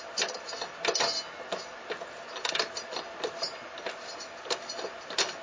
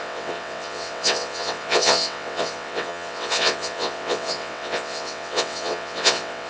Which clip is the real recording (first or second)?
first